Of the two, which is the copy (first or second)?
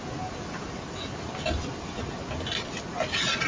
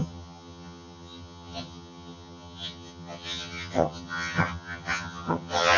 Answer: second